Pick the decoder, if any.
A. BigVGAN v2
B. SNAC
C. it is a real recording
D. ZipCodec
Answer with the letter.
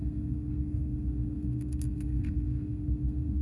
B